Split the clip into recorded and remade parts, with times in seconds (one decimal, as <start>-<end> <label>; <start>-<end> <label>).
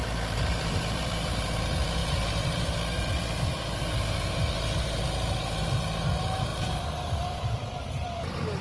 0.0-8.6 remade